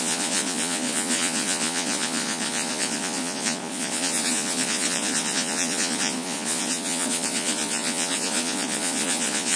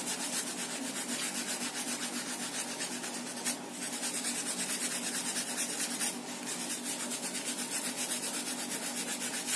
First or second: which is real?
second